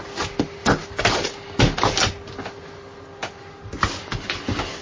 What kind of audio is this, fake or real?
real